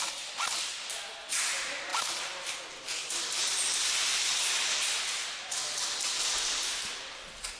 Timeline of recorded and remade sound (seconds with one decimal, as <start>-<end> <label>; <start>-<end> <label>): 0.0-7.6 recorded